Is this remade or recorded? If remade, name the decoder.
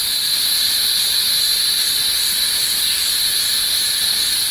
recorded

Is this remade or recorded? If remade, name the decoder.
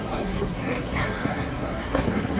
remade, codec, SNAC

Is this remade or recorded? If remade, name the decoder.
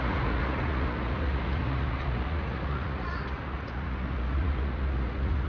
remade, vocoder, Vocos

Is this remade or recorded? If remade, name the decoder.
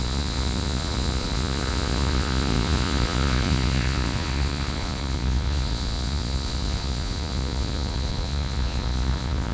remade, vocoder, Vocos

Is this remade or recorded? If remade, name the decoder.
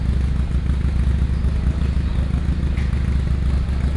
recorded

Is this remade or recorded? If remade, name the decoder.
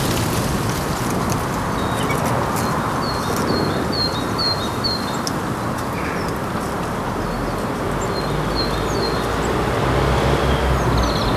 recorded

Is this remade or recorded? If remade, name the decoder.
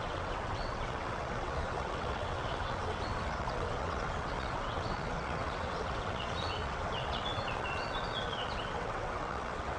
remade, vocoder, WaveNeXt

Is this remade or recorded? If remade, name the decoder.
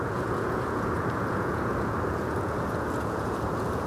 remade, vocoder, Vocos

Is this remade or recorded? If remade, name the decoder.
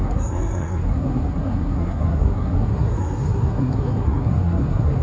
remade, codec, SNAC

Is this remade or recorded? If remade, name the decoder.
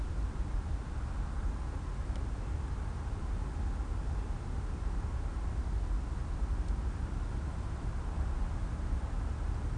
recorded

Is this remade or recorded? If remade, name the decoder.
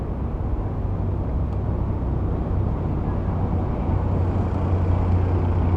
recorded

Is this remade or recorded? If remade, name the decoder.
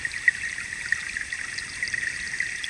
recorded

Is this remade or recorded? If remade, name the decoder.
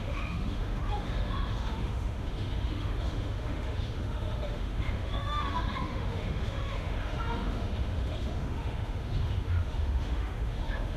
remade, autoencoder, DAC-VAE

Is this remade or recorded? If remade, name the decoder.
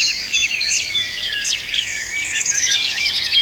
remade, codec, DAC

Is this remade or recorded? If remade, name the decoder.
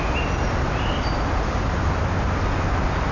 recorded